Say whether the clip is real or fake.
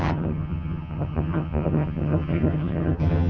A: fake